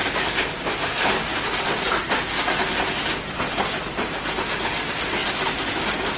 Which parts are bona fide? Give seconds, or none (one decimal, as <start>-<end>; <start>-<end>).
0.0-6.2